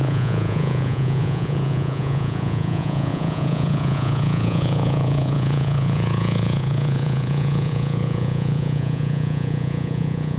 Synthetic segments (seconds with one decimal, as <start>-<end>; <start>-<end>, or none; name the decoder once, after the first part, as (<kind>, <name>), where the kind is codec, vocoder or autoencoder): 0.0-10.4 (vocoder, Vocos)